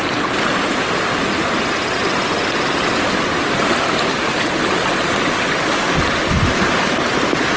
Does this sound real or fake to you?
real